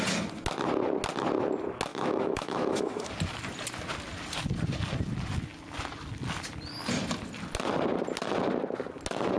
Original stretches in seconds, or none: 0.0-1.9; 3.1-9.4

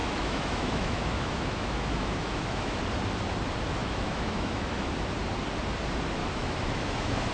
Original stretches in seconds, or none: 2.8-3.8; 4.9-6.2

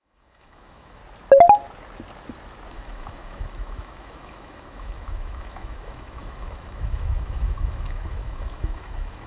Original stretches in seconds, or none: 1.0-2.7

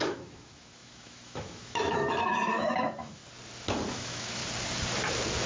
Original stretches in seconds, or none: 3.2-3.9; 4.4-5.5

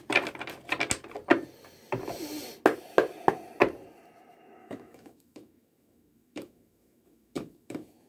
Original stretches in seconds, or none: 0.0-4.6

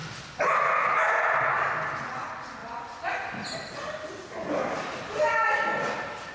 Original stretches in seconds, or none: 0.0-6.3

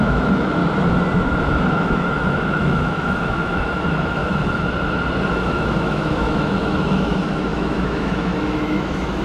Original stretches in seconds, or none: 0.6-1.7; 4.2-5.3

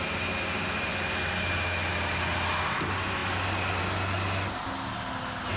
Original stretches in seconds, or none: 0.0-5.6